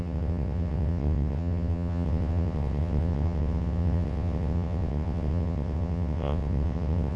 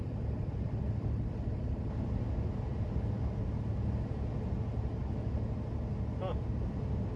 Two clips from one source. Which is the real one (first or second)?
second